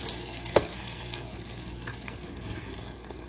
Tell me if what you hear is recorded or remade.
remade